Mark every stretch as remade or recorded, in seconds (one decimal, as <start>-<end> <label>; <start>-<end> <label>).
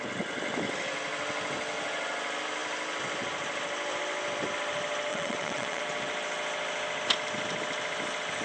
0.0-5.1 recorded; 5.1-5.8 remade; 5.8-8.4 recorded